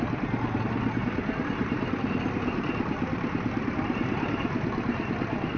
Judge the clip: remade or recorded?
recorded